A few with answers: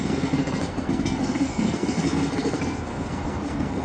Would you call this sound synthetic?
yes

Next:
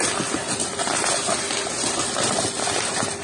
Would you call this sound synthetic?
no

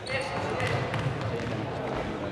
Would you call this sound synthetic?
no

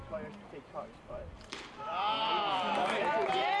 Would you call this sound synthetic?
yes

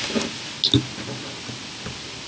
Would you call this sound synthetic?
no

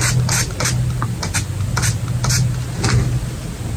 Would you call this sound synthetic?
no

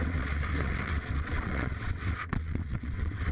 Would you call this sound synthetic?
yes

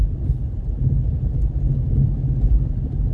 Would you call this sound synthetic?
no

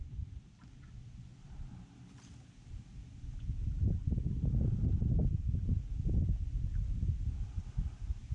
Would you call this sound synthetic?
no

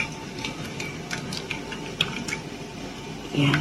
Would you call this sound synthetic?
no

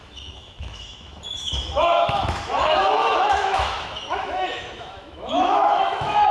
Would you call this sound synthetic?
yes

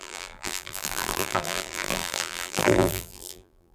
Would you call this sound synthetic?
yes